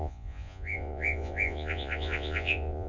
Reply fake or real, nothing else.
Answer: fake